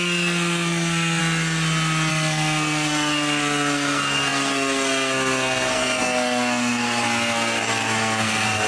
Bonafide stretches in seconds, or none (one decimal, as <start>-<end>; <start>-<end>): 1.2-2.1